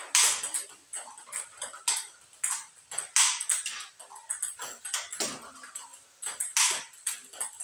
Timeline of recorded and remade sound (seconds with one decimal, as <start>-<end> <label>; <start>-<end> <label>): 0.0-7.6 recorded